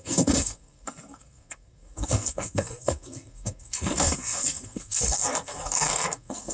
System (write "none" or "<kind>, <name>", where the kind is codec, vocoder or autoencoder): codec, SNAC